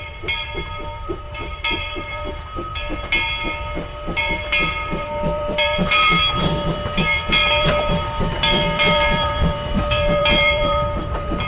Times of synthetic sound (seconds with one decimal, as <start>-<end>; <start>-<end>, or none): 0.0-2.7; 4.2-11.5